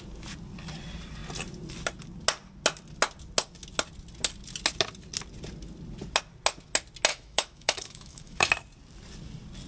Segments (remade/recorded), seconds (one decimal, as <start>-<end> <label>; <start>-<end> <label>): 0.0-7.1 recorded; 7.1-8.5 remade; 8.5-9.7 recorded

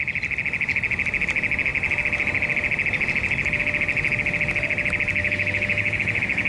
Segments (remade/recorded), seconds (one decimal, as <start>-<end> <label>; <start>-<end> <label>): 0.0-5.2 recorded; 5.2-6.5 remade

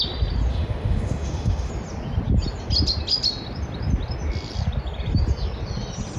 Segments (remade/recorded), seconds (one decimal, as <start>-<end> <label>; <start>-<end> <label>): 0.0-0.5 recorded; 0.5-1.7 remade; 1.7-6.2 recorded

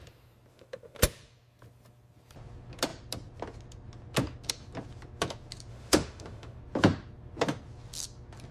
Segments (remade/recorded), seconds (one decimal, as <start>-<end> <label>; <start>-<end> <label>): 0.0-0.5 recorded; 0.5-1.0 remade; 1.0-5.7 recorded; 5.7-6.6 remade; 6.6-8.5 recorded